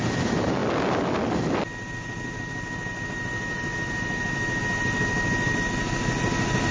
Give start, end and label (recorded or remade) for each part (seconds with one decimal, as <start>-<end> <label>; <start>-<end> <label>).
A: 0.0-6.7 recorded